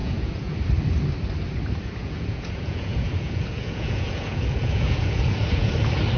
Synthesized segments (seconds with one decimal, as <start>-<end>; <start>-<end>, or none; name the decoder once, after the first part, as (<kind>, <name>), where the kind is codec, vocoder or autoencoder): 0.0-0.6 (vocoder, Vocos); 2.0-5.7